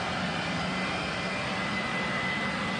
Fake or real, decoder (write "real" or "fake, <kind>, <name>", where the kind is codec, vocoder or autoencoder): real